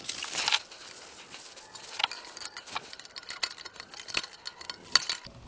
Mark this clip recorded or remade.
recorded